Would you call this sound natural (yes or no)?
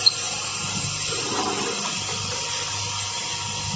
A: yes